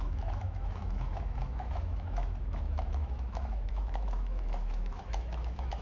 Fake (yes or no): yes